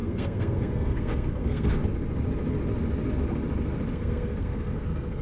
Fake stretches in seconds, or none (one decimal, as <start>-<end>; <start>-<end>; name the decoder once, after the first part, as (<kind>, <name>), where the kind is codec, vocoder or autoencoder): 0.0-1.8 (codec, SNAC); 3.9-5.2